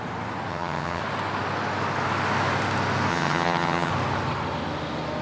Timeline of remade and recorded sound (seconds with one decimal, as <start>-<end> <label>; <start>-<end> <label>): 0.0-0.5 recorded; 0.5-1.0 remade; 1.0-3.1 recorded; 3.1-3.9 remade; 3.9-5.2 recorded